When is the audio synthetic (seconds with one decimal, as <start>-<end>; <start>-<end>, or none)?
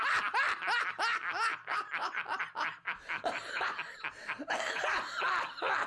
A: 1.5-5.0